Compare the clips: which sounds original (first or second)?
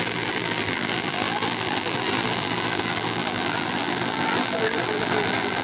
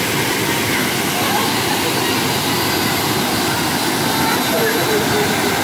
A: second